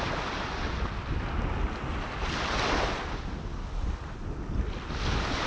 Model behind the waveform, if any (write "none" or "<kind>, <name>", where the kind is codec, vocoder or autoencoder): none